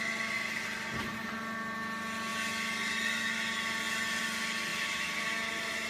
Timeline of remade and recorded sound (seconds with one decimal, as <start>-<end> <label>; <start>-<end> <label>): 0.0-4.7 recorded; 4.7-5.3 remade; 5.3-5.9 recorded